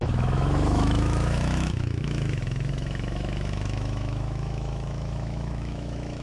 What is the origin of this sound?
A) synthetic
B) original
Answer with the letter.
A